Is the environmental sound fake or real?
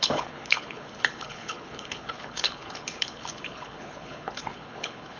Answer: fake